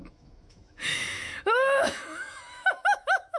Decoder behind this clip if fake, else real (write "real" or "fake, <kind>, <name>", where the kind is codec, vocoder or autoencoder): fake, autoencoder, DAC-VAE